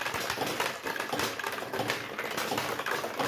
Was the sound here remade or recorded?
recorded